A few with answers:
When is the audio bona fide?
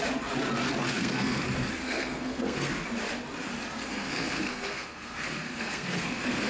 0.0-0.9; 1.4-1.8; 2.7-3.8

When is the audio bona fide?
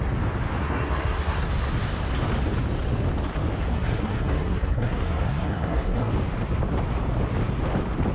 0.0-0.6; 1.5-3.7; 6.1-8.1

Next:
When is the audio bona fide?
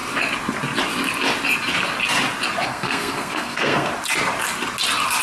0.0-2.7; 3.9-5.2